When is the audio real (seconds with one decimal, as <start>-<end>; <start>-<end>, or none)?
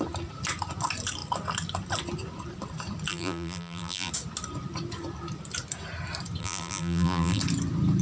0.0-3.1; 4.1-6.4; 7.4-8.0